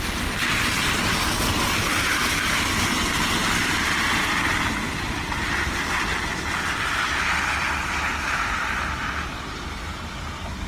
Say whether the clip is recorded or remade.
recorded